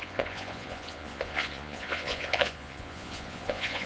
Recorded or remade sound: remade